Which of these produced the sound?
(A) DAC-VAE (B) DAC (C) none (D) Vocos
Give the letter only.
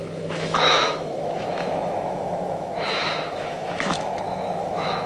A